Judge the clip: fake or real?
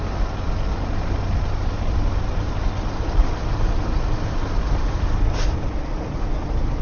real